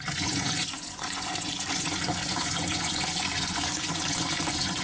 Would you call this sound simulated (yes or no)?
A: yes